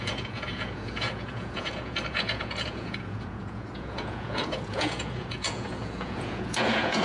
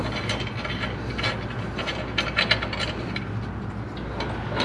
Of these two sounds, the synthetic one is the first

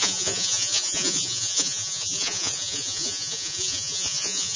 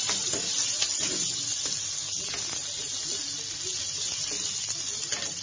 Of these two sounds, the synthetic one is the first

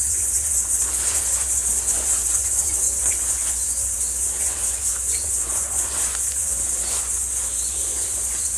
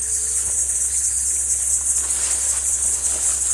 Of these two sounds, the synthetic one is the first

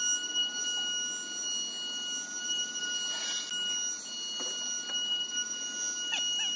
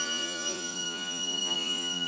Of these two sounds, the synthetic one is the second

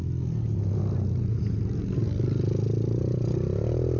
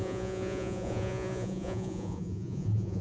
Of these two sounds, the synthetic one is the second